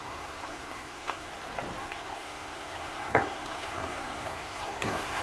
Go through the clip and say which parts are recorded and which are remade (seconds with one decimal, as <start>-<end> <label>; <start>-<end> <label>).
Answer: 0.0-1.3 remade; 1.3-1.8 recorded; 1.8-5.2 remade